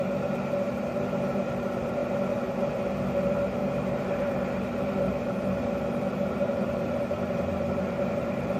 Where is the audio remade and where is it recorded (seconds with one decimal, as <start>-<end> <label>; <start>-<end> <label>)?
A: 0.0-2.0 remade; 2.0-2.6 recorded; 2.6-8.6 remade